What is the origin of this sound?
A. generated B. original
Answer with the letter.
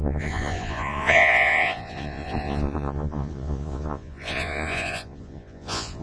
A